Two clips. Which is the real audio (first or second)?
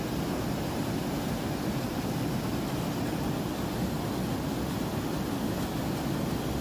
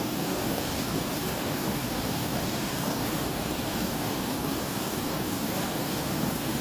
first